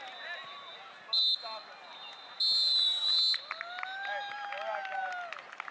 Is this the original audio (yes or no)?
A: yes